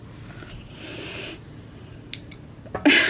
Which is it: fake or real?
real